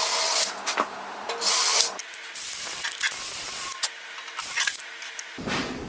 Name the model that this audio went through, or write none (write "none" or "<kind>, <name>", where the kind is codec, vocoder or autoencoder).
none